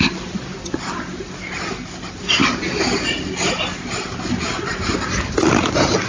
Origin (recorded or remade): recorded